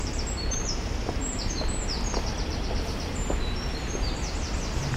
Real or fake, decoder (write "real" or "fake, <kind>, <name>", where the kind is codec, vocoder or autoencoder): fake, vocoder, BigVGAN v2